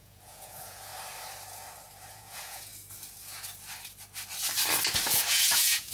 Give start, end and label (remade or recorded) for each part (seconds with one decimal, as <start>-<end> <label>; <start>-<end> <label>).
0.0-0.9 remade; 0.9-2.1 recorded; 2.1-2.7 remade; 2.7-5.1 recorded; 5.1-5.9 remade